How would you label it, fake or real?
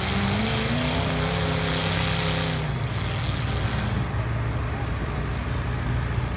real